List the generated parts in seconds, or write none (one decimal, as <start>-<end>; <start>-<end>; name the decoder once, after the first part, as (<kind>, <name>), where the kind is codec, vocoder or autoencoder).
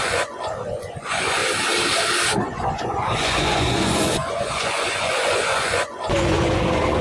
0.0-1.4 (vocoder, Vocos); 2.4-7.0